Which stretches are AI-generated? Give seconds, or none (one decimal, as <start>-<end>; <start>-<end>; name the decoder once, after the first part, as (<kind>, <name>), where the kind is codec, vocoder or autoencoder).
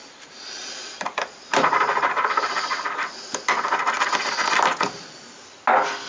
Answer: 0.0-2.9 (vocoder, BigVGAN v2)